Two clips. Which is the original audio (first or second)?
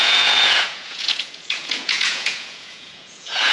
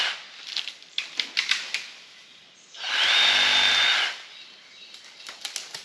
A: second